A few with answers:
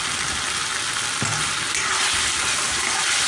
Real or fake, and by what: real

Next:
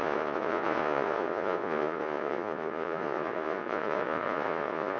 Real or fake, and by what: fake, vocoder, Vocos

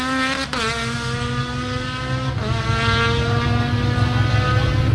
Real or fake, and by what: real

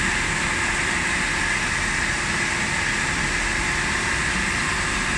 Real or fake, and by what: real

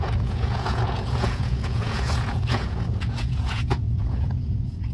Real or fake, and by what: fake, vocoder, Vocos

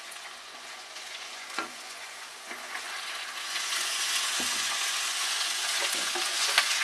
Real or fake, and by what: fake, vocoder, Vocos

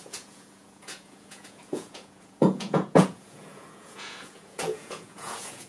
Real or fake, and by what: fake, vocoder, Vocos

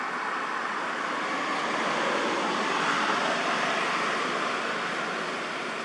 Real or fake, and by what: real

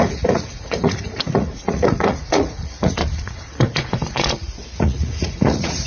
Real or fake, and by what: fake, vocoder, Vocos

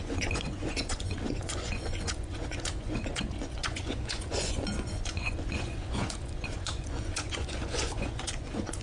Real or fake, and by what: fake, vocoder, Vocos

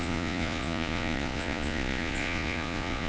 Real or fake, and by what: fake, vocoder, Vocos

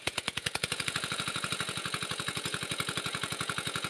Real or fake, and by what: fake, vocoder, Vocos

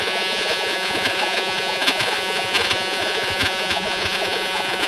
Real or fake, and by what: fake, vocoder, Vocos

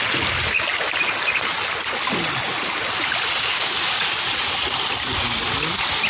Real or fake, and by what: real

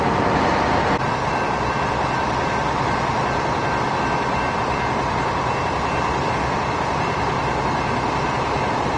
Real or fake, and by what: real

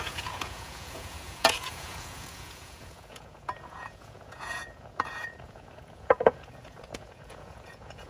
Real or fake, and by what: fake, vocoder, Vocos